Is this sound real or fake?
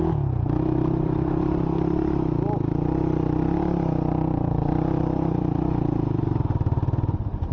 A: real